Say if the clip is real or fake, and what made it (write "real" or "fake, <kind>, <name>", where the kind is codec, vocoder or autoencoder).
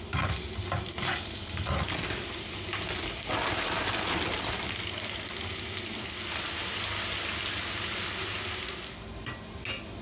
real